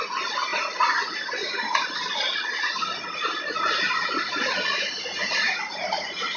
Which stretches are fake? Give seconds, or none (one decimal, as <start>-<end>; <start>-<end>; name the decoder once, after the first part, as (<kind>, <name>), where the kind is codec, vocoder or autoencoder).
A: none